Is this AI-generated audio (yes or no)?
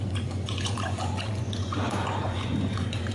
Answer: yes